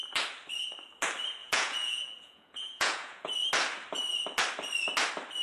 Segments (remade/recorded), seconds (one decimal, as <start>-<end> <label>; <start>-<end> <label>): 0.0-1.4 recorded; 1.4-3.3 remade; 3.3-5.4 recorded